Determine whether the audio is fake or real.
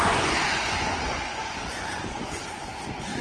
fake